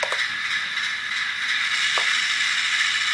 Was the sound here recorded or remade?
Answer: recorded